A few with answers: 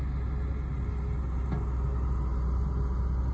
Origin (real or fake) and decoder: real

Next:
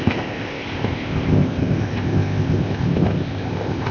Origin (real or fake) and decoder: fake, codec, ZipCodec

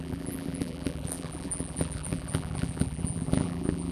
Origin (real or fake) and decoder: fake, vocoder, BigVGAN v2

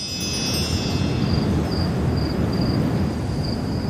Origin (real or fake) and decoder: real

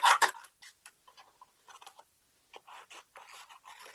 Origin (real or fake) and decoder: real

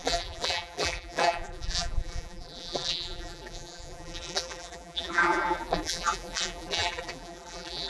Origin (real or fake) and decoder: fake, vocoder, BigVGAN v2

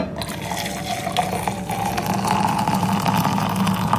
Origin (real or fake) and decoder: real